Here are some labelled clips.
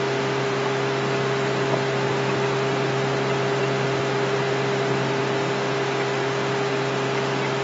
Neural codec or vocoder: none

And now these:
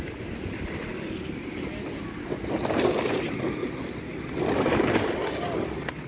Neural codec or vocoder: none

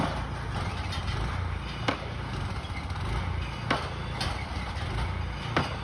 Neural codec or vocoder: none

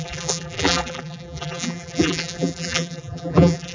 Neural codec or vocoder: vocoder, BigVGAN v2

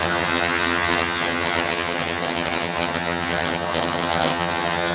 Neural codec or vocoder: vocoder, HiFi-GAN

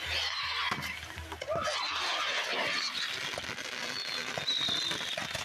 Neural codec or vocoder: none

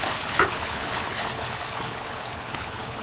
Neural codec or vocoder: codec, HILCodec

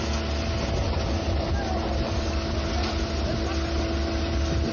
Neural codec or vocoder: none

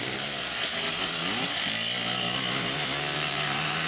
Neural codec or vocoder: none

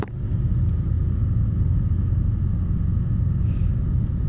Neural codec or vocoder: none